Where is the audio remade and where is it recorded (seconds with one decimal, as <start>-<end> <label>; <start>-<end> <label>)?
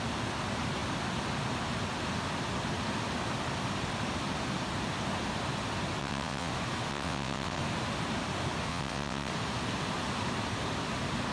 0.0-6.0 recorded; 6.0-6.5 remade; 6.5-6.9 recorded; 6.9-7.6 remade; 7.6-8.7 recorded; 8.7-9.3 remade; 9.3-11.3 recorded